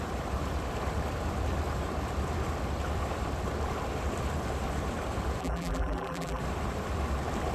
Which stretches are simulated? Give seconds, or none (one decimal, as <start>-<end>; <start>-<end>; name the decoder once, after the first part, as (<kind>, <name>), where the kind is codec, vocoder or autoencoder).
5.4-6.4 (vocoder, BigVGAN v2)